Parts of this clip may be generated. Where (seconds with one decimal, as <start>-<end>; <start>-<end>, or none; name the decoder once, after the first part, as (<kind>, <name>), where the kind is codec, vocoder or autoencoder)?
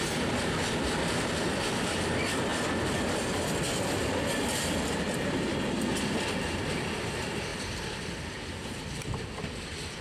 0.0-2.5 (vocoder, BigVGAN v2); 6.6-10.0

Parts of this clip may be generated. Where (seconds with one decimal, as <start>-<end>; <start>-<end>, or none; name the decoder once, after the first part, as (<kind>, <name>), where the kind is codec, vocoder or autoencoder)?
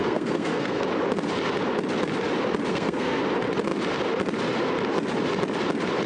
0.0-0.8 (codec, SNAC); 2.7-3.2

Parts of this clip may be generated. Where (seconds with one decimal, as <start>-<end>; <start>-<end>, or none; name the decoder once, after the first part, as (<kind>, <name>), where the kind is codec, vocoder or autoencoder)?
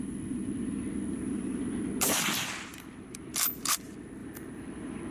1.1-1.6 (vocoder, BigVGAN v2); 2.7-3.3; 4.2-5.1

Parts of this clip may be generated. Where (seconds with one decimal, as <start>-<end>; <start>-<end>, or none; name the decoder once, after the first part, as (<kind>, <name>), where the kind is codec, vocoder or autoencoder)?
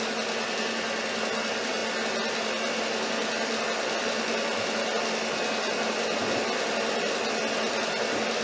none